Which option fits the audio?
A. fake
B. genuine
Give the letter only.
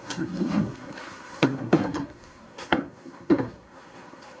A